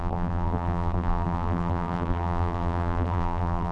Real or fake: fake